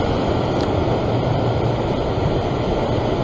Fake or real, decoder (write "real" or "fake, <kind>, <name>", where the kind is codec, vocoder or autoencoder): real